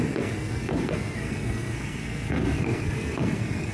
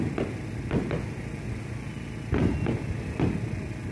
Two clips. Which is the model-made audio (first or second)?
first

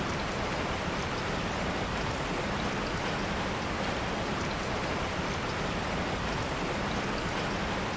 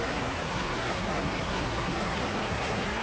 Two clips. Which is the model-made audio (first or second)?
second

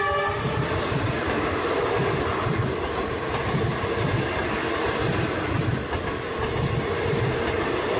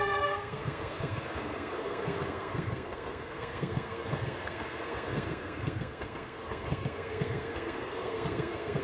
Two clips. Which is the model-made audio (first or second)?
second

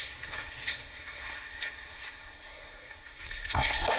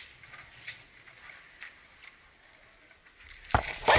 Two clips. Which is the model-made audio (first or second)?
first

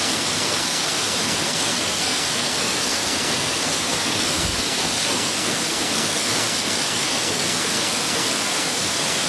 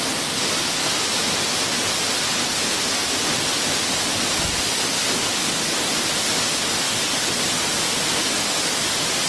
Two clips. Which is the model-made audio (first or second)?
first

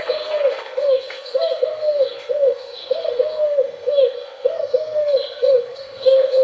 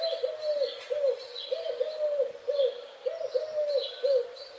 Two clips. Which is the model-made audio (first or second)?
first